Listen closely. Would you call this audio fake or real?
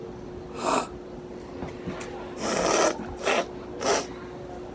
real